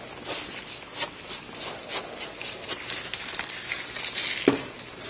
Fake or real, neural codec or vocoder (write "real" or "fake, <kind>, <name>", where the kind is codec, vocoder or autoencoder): real